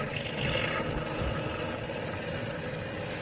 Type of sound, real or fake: real